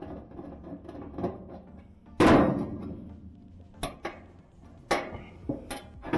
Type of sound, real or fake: real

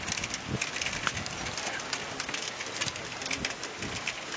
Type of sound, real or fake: real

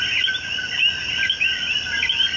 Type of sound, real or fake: real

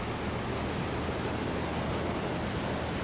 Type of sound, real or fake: real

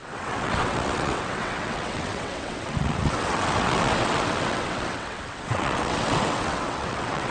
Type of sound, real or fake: fake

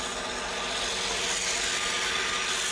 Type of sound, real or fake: real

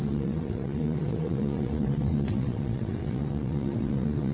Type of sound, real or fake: fake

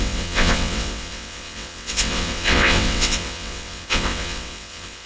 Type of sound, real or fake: fake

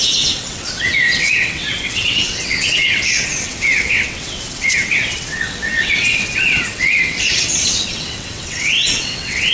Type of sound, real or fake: fake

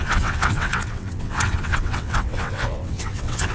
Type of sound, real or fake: fake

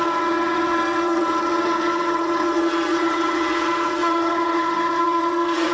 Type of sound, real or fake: fake